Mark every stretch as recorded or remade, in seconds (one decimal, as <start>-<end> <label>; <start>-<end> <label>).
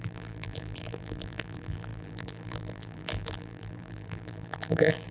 0.0-5.1 remade